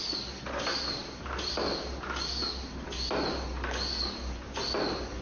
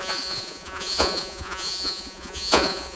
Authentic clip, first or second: first